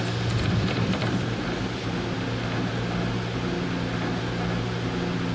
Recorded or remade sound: recorded